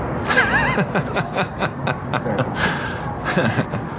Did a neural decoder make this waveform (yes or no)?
no